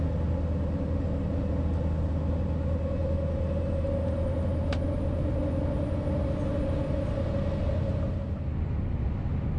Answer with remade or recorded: recorded